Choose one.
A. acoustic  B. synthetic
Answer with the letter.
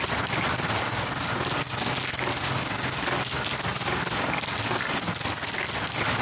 A